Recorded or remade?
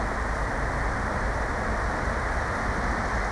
recorded